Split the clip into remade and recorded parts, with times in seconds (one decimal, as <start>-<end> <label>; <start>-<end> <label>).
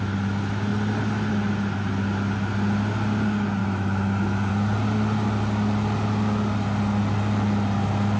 0.0-3.6 recorded; 3.6-4.5 remade; 4.5-8.2 recorded